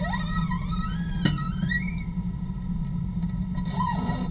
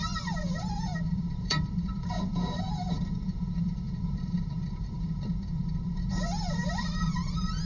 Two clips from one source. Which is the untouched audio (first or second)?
first